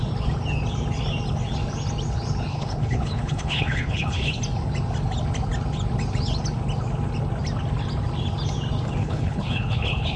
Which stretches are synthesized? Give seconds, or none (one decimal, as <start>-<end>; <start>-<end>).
2.5-4.4; 9.0-10.2

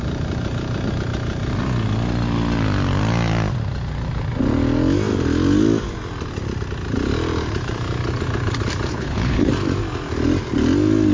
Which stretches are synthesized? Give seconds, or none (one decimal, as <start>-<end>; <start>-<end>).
8.9-9.5

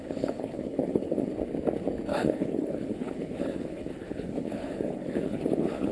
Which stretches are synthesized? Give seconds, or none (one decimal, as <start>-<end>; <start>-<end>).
0.0-1.3; 2.1-5.9

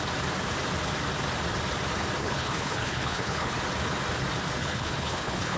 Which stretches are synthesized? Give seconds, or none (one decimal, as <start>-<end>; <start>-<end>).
2.2-3.6; 4.6-5.6

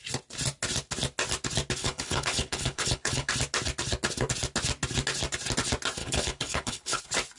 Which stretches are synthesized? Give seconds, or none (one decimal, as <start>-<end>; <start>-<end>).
1.8-3.3; 6.0-7.0